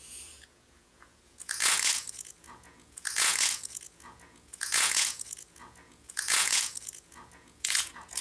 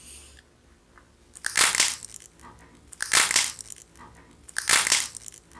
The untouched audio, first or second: second